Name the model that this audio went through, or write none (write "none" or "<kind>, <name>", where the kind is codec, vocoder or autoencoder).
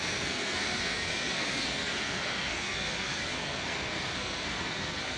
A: codec, SNAC